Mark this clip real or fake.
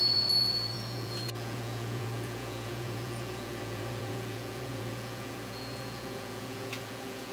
fake